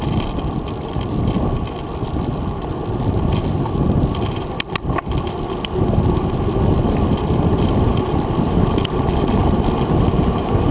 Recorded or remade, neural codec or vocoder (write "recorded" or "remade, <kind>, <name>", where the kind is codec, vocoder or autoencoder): remade, vocoder, BigVGAN v2